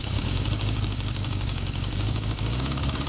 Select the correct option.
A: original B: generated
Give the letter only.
B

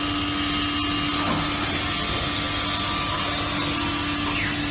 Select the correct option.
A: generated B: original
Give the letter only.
B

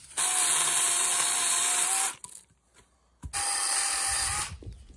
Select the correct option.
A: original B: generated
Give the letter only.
A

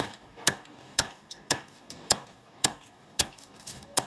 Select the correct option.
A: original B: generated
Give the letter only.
B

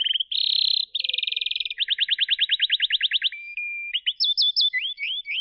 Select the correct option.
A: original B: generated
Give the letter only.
A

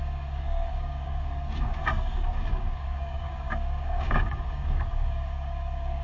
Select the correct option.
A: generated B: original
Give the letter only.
A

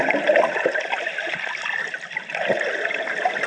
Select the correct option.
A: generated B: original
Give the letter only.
B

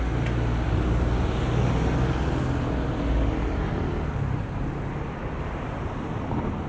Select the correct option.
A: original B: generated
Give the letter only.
A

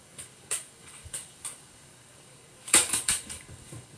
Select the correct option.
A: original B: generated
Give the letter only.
B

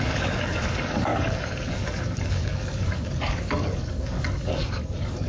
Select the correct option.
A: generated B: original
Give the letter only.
A